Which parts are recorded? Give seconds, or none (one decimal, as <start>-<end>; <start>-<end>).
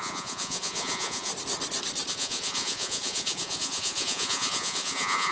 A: 1.3-2.1